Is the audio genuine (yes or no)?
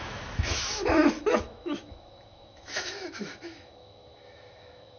no